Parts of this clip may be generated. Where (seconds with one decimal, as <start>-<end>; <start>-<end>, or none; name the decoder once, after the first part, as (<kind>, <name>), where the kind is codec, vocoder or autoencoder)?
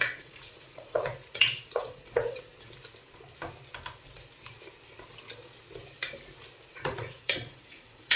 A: 0.0-2.5 (vocoder, Vocos); 6.7-8.2